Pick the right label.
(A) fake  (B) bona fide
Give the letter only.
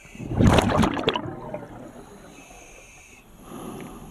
B